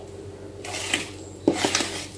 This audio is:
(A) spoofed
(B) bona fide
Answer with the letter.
B